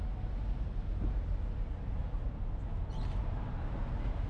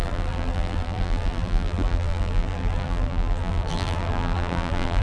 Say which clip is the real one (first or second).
first